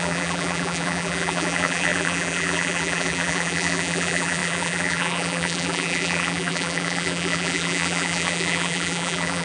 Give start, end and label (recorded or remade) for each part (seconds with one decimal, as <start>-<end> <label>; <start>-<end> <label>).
0.0-9.4 remade